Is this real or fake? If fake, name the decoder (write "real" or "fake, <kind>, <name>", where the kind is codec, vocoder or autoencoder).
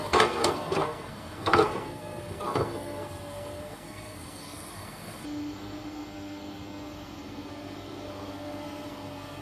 fake, codec, SNAC